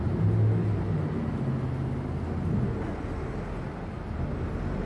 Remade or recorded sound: recorded